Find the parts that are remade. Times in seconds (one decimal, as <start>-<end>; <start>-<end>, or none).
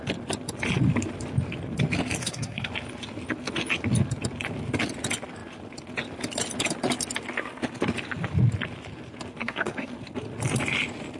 2.2-2.7; 9.4-9.9